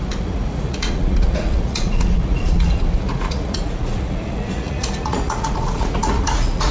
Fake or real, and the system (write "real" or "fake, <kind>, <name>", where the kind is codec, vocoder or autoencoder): fake, vocoder, Vocos